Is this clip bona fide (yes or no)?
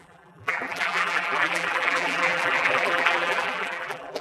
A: no